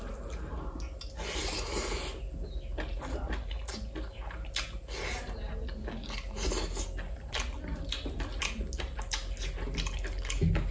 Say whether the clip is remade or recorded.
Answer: recorded